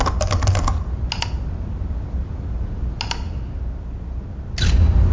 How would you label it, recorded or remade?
recorded